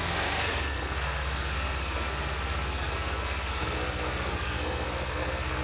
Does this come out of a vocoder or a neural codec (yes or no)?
yes